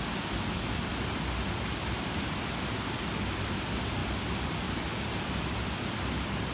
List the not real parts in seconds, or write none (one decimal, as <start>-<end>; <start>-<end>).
4.0-6.5